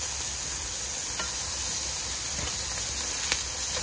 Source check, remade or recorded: recorded